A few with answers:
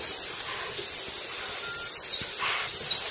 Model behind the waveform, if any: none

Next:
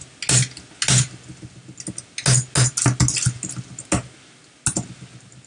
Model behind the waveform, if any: none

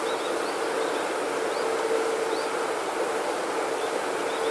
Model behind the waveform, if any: none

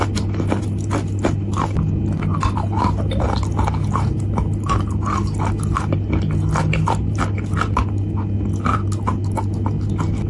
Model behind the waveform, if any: none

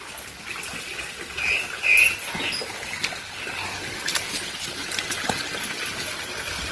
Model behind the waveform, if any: none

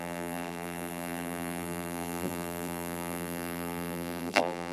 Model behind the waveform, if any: vocoder, BigVGAN v2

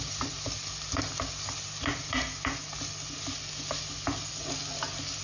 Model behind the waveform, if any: none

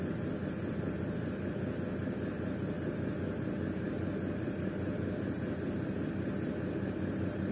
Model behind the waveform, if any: none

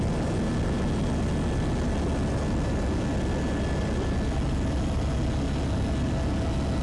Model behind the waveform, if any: none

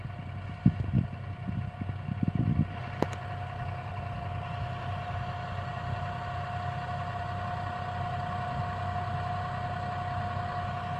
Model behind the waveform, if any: none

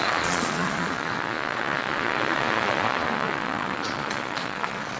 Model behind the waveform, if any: vocoder, Vocos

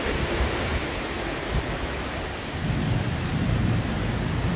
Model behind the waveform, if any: vocoder, BigVGAN v2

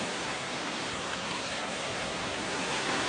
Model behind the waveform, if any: codec, SNAC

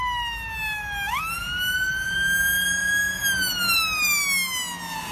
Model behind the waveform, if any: none